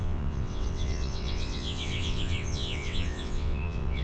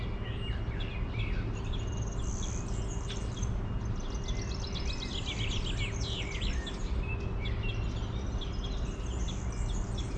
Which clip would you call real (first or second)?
second